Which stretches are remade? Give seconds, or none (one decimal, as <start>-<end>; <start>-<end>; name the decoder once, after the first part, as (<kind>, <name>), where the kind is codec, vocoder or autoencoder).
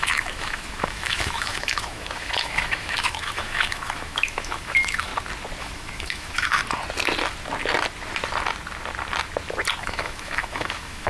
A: 0.0-5.1 (autoencoder, DAC-VAE); 5.6-6.6; 9.8-11.1